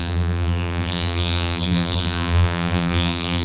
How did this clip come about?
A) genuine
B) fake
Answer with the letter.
B